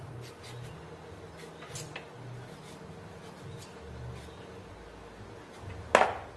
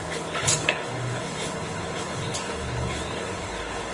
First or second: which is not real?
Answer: second